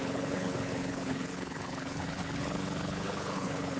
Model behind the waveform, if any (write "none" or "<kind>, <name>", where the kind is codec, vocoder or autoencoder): codec, HILCodec